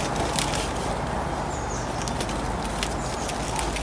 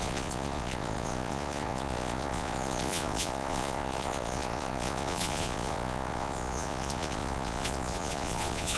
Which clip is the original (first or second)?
first